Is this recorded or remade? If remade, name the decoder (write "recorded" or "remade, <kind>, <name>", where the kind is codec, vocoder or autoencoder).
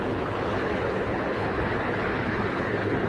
remade, codec, HILCodec